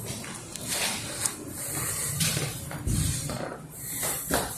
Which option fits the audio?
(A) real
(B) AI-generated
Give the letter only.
B